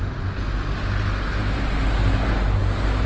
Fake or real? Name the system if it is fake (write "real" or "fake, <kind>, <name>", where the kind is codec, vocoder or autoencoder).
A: real